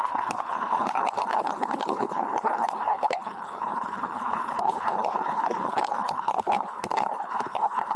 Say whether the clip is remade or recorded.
remade